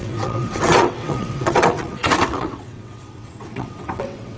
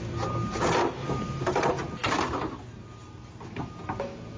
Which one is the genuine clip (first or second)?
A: second